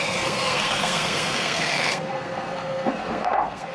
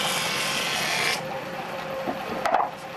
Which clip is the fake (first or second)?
first